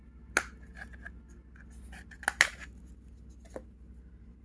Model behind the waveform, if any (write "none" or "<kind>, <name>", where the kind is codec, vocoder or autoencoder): none